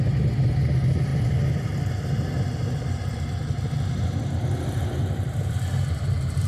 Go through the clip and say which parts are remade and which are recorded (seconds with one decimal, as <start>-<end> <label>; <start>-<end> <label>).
0.0-6.5 recorded